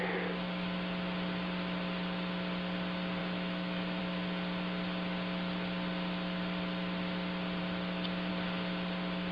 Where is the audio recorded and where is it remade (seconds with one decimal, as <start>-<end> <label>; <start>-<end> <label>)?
0.0-3.2 recorded; 3.2-4.0 remade; 4.0-9.3 recorded